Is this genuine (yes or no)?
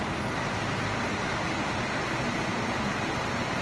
yes